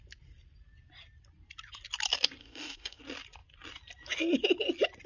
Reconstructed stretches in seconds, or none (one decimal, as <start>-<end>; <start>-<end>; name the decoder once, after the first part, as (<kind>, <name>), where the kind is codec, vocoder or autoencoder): 2.4-3.0 (codec, DAC)